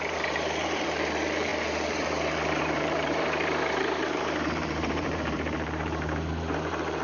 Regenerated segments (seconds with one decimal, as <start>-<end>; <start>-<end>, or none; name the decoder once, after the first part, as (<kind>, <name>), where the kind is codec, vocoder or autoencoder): 0.0-7.0 (vocoder, BigVGAN v2)